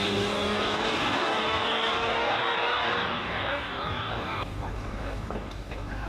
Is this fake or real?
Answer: fake